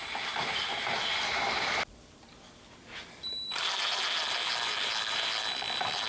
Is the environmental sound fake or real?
fake